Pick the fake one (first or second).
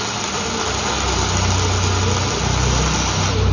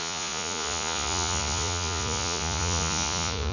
second